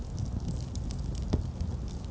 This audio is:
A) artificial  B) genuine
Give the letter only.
B